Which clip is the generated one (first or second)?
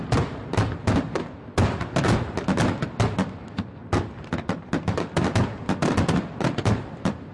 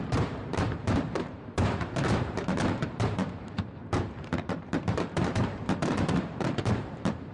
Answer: second